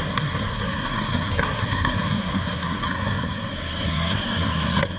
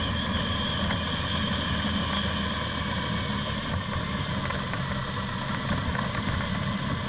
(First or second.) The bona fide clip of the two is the second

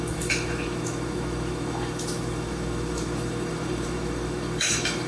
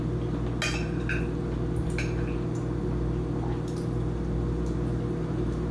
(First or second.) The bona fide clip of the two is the second